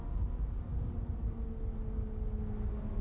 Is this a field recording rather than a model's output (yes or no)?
yes